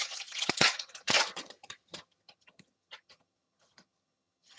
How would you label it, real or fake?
fake